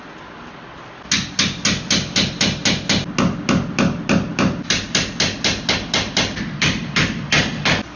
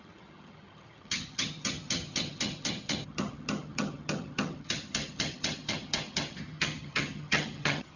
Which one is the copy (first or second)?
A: second